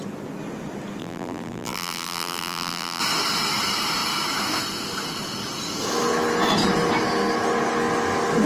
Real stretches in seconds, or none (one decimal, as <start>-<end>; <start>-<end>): 0.0-1.0; 3.0-8.5